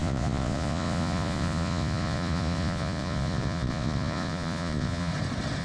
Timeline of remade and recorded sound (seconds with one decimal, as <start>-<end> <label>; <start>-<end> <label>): 0.0-5.1 remade; 5.1-5.6 recorded